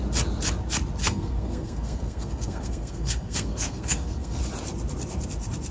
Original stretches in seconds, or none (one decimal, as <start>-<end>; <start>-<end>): 0.0-1.0; 4.4-5.7